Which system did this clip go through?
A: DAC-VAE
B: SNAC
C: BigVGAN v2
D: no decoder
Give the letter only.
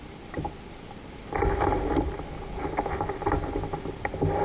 D